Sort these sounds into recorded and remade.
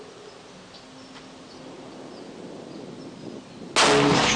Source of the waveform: recorded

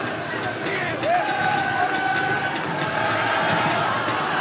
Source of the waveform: recorded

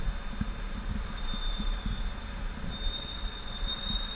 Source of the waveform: recorded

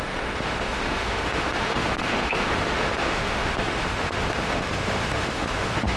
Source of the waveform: remade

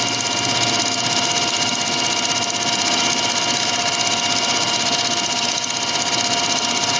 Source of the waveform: recorded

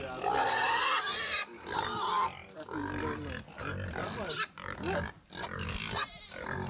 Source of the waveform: recorded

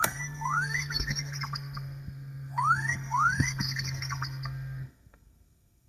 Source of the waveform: remade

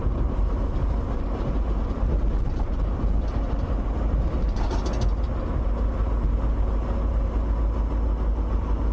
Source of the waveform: recorded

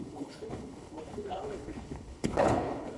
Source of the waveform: remade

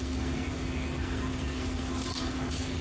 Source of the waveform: remade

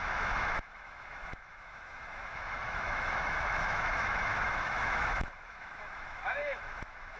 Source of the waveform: remade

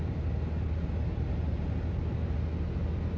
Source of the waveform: recorded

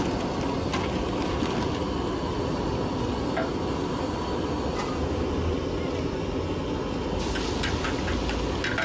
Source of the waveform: recorded